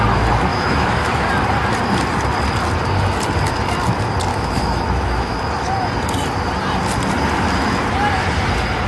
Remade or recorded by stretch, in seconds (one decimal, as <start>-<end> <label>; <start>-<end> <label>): 0.0-0.5 recorded; 0.5-1.3 remade; 1.3-4.3 recorded; 4.3-5.4 remade; 5.4-8.9 recorded